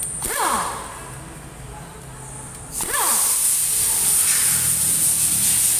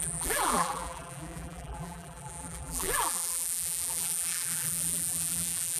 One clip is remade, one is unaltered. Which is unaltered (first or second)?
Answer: first